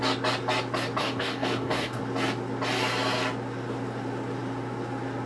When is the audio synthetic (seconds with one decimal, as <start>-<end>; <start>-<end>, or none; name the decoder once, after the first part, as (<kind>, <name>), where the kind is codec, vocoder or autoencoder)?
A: 1.0-2.0 (codec, DAC)